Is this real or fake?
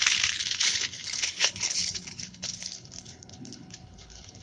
fake